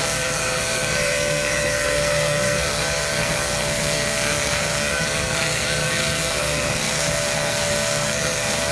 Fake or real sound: fake